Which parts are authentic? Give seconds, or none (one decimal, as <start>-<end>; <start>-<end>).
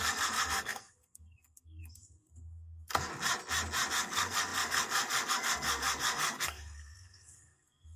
3.1-3.9